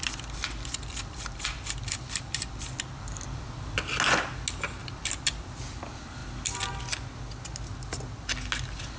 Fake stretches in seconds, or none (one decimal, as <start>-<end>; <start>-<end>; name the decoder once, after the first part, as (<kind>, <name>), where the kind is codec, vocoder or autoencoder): 0.0-3.5 (vocoder, BigVGAN v2); 4.8-5.4